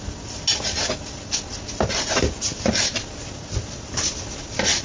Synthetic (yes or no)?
no